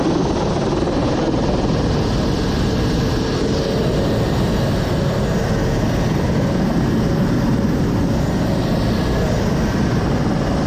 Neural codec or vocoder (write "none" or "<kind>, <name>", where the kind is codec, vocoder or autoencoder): none